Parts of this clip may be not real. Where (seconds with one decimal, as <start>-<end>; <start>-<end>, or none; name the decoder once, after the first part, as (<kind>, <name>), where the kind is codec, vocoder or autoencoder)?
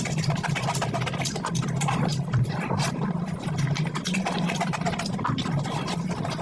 none